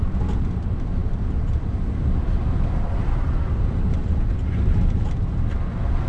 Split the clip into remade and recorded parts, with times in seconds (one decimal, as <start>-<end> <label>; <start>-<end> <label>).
0.0-6.1 recorded